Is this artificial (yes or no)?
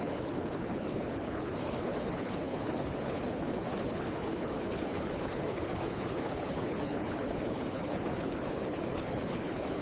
yes